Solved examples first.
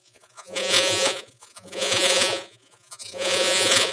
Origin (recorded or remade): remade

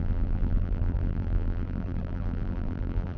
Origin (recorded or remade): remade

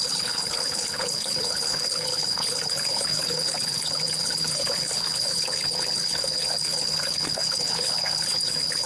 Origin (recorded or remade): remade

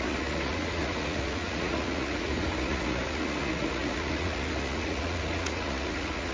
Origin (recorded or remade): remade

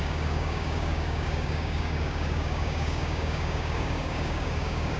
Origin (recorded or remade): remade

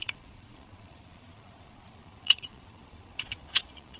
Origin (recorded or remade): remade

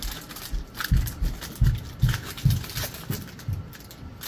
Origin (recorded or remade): recorded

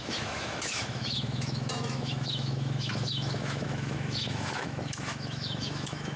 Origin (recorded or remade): remade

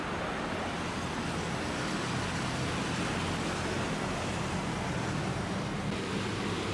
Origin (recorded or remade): recorded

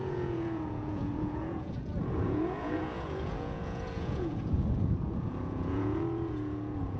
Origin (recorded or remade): remade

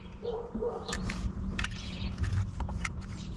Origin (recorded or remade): remade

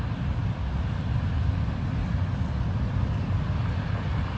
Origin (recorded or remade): recorded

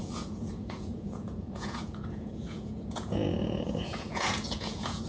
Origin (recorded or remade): remade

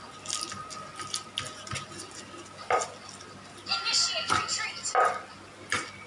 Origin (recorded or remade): recorded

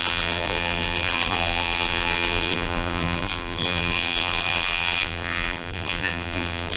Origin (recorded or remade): remade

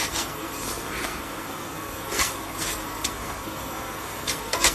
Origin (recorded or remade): remade